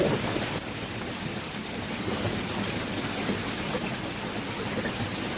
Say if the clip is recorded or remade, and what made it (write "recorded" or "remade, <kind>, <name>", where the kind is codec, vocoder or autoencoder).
recorded